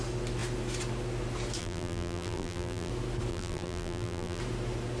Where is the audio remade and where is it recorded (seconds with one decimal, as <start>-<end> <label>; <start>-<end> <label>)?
0.0-1.6 recorded; 1.6-2.9 remade; 2.9-3.3 recorded; 3.3-4.4 remade; 4.4-5.0 recorded